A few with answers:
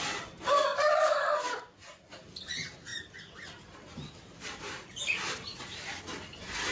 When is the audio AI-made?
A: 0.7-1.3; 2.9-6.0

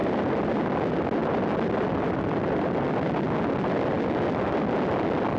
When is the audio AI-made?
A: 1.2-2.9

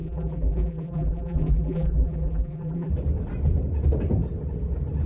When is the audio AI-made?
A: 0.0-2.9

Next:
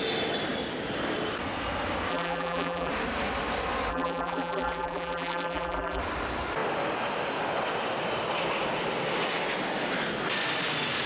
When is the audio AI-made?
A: 2.1-2.9; 3.9-6.0

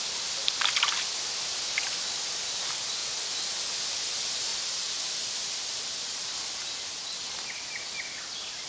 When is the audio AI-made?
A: 4.5-5.8